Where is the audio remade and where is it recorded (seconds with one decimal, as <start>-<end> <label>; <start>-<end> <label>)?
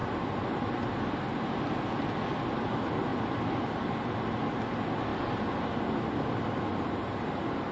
0.0-6.7 recorded; 6.7-7.3 remade; 7.3-7.7 recorded